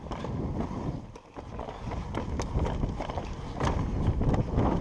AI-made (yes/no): no